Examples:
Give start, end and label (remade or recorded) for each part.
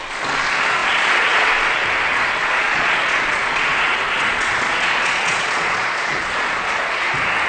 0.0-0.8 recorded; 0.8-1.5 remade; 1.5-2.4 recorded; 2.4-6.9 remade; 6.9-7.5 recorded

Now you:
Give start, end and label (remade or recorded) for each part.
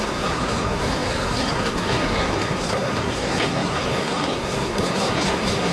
0.0-5.7 remade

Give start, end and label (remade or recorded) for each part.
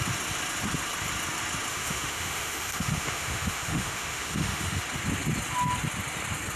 0.0-1.7 recorded; 1.7-4.8 remade; 4.8-6.6 recorded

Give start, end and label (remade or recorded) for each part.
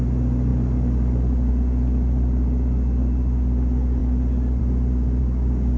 0.0-5.2 recorded; 5.2-5.8 remade